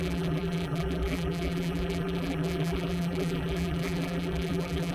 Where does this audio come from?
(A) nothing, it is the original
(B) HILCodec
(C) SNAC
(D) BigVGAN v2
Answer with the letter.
D